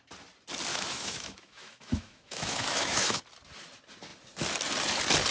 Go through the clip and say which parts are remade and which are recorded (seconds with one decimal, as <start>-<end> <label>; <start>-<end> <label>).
0.0-0.7 recorded; 0.7-3.2 remade; 3.2-5.3 recorded